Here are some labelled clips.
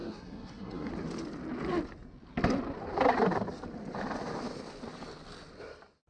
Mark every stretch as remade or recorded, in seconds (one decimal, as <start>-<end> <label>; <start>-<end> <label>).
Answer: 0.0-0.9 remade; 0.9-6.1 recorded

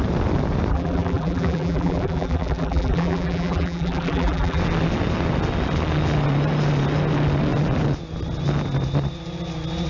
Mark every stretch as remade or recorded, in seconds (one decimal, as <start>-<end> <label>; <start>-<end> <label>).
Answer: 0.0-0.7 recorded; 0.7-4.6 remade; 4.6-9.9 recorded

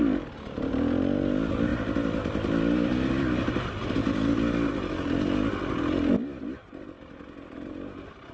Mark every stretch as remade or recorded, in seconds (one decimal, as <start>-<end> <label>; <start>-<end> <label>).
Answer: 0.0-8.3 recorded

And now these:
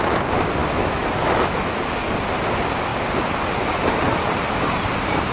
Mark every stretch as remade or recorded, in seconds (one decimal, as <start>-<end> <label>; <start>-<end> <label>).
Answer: 0.0-0.6 recorded; 0.6-1.8 remade; 1.8-5.3 recorded

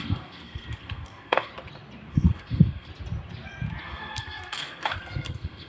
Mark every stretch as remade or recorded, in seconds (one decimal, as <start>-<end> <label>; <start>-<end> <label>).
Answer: 0.0-1.5 remade; 1.5-2.1 recorded; 2.1-2.9 remade; 2.9-3.8 recorded; 3.8-5.7 remade

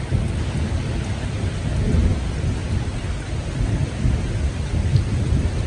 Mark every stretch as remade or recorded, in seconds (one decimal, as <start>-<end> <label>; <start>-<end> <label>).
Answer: 0.0-5.7 recorded